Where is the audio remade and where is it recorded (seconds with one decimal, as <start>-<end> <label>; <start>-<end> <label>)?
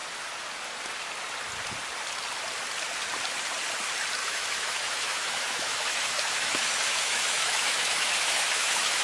0.0-4.2 recorded; 4.2-9.0 remade